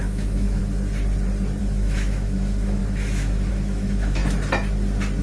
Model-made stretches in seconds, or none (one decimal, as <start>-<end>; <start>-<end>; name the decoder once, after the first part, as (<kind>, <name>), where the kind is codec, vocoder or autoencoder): 0.0-0.6 (autoencoder, DAC-VAE); 1.6-4.2